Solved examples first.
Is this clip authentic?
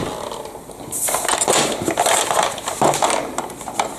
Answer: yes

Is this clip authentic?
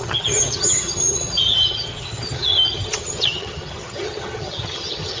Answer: no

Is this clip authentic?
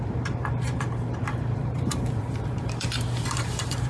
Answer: no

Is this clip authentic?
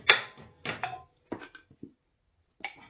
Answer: yes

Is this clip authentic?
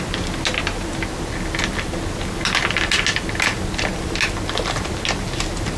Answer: yes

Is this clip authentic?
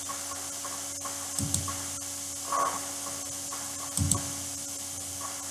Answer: yes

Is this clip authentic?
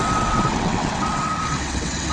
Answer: no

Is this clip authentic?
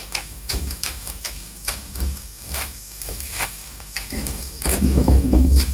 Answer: no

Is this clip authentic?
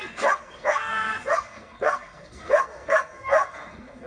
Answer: no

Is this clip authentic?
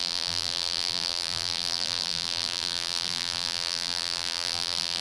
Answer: no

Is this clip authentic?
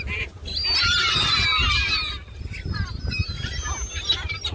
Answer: yes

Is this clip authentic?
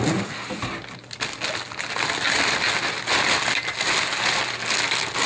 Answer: yes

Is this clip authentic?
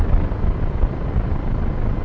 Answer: yes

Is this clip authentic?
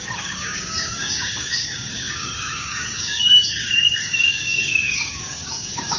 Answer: no